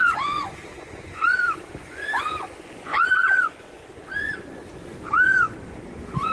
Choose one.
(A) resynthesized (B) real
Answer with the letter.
A